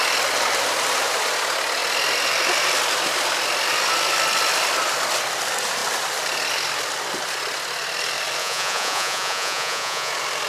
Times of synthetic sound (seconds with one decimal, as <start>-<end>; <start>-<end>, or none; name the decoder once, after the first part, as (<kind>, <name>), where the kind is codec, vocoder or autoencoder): 8.4-10.1 (vocoder, Vocos)